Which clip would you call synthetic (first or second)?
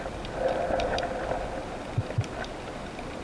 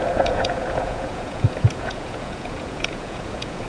second